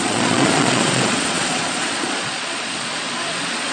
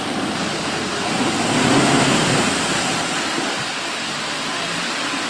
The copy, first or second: first